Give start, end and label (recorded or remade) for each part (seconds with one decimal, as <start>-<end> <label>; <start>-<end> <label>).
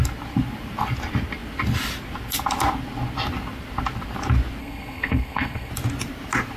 0.0-4.6 recorded; 4.6-5.7 remade; 5.7-6.6 recorded